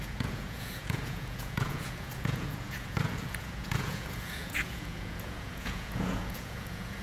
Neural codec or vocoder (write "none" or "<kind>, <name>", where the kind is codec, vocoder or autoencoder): vocoder, Vocos